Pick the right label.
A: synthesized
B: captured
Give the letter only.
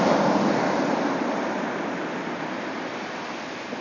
B